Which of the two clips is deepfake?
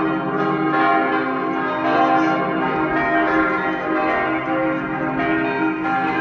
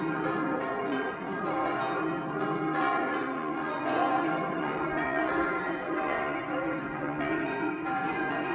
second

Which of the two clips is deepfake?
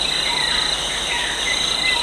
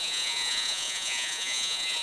second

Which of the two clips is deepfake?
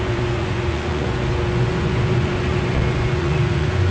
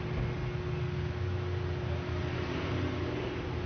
first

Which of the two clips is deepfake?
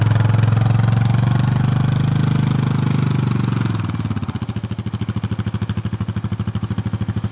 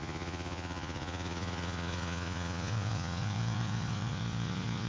second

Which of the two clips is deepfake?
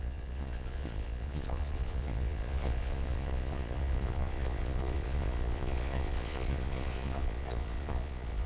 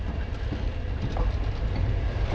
first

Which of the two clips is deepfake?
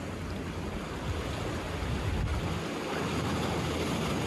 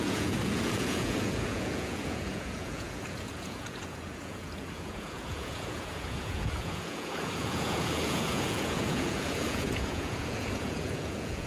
second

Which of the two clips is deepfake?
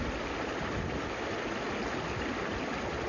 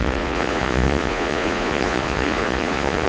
second